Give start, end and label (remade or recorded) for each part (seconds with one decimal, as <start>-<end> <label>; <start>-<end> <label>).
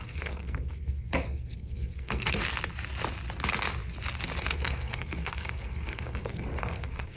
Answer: 0.0-2.4 remade; 2.4-4.4 recorded; 4.4-7.2 remade